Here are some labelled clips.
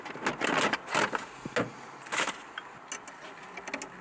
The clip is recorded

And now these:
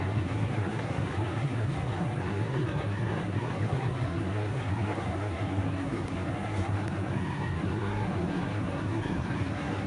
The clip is remade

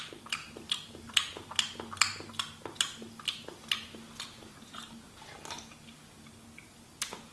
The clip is recorded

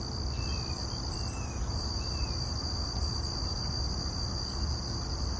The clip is recorded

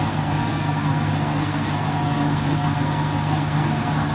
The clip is remade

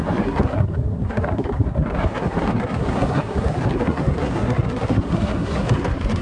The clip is remade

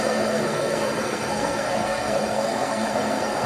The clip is remade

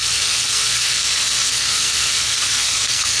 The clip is remade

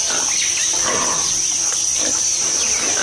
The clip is recorded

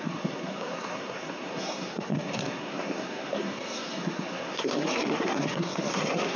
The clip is remade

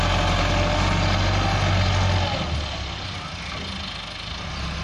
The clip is recorded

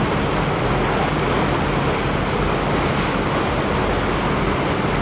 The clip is recorded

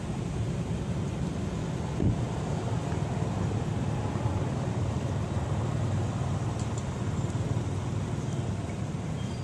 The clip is recorded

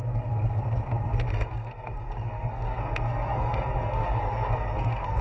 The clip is remade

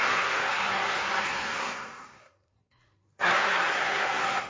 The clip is remade